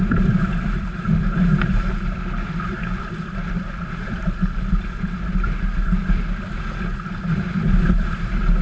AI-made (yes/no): yes